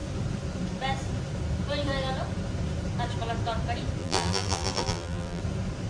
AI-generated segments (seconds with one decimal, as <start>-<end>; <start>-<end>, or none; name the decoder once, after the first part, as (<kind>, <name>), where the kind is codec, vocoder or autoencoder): 4.0-5.4 (vocoder, BigVGAN v2)